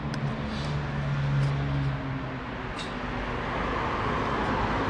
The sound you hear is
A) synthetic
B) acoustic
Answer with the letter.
B